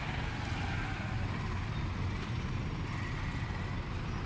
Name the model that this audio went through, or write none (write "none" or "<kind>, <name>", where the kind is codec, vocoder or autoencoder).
none